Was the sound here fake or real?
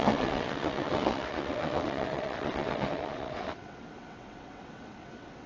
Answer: fake